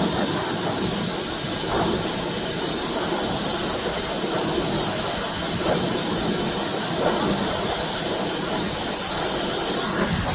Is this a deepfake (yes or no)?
no